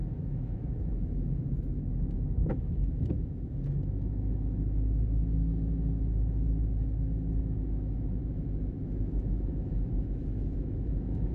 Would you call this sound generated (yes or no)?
yes